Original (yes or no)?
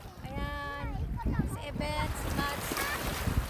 yes